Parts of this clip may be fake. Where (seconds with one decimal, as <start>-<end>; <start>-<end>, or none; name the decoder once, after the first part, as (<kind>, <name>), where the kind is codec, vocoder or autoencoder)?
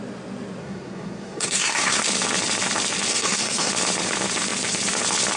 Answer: 0.6-2.0 (codec, SNAC); 3.1-3.7